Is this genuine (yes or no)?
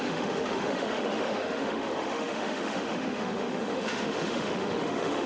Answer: no